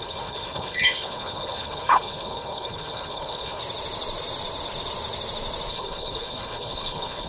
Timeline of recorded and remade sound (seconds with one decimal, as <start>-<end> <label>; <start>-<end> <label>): 0.0-3.6 remade; 3.6-5.7 recorded; 5.7-7.3 remade